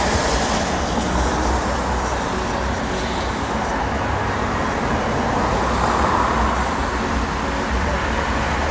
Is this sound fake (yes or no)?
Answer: no